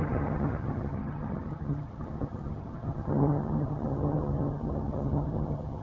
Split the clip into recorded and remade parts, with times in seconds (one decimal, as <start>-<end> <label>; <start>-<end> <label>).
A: 0.0-5.8 remade